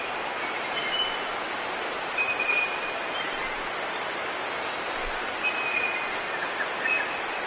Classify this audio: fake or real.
real